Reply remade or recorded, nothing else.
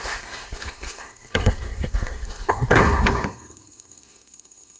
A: remade